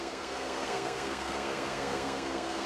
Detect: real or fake fake